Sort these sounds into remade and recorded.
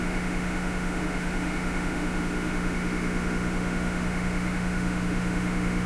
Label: remade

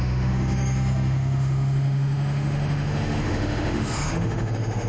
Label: remade